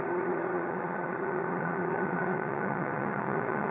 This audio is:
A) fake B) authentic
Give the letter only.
A